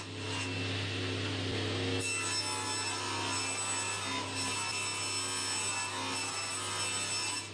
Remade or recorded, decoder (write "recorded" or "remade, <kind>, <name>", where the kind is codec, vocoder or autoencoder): recorded